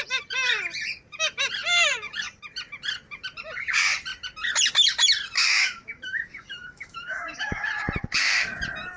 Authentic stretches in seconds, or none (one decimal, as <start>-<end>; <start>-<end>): 0.0-5.4; 7.7-9.0